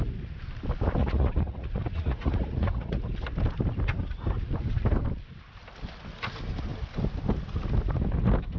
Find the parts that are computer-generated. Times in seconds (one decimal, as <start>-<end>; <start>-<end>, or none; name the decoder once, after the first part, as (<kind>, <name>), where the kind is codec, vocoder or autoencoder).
1.0-3.0 (vocoder, Vocos)